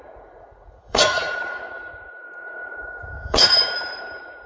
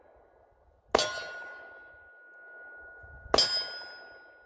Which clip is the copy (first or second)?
first